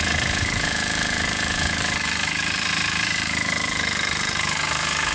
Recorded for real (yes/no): no